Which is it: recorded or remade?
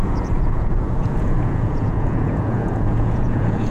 remade